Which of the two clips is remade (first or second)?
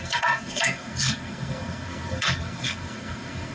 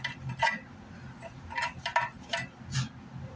first